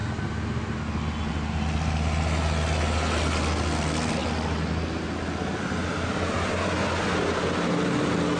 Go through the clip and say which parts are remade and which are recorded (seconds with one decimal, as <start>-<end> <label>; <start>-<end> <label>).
0.0-8.4 recorded